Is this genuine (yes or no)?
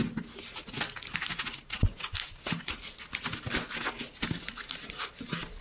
yes